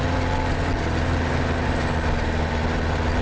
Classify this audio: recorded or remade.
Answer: recorded